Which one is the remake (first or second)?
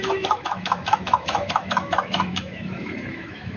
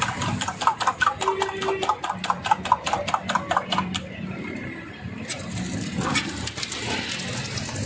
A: first